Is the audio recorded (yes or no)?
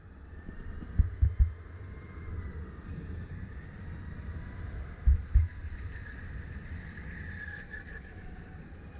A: yes